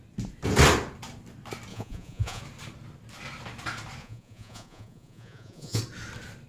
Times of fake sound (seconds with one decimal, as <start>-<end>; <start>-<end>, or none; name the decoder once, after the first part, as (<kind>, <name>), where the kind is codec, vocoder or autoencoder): 1.7-2.4 (vocoder, Vocos); 4.0-5.8